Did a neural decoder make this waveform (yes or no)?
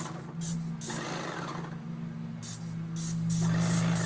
no